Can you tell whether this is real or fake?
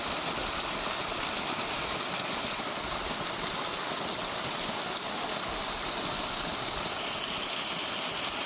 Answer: real